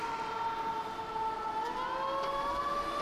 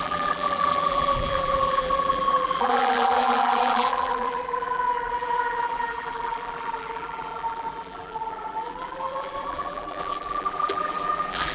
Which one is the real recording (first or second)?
first